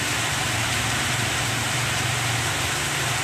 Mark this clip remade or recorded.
remade